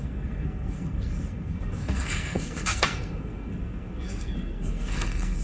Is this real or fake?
fake